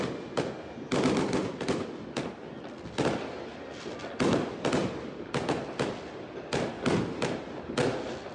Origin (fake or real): real